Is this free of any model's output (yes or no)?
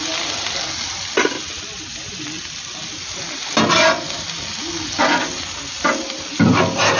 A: yes